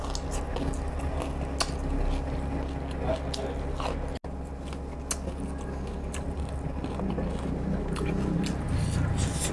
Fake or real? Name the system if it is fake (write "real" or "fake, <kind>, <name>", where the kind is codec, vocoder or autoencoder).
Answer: real